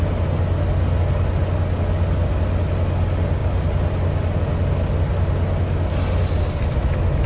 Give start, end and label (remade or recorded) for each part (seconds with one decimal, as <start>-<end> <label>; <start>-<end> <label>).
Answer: 0.0-7.3 recorded